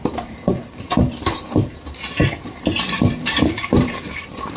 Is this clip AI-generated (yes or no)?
yes